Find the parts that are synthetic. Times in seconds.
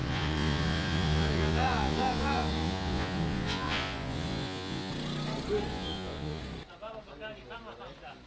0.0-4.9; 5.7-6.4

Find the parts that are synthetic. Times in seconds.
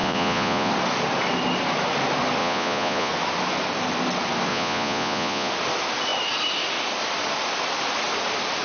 0.0-0.7; 2.4-3.1; 4.5-5.5